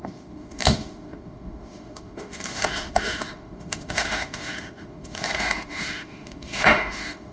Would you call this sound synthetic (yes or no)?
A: yes